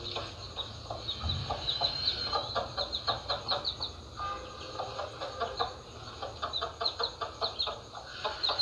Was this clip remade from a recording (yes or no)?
no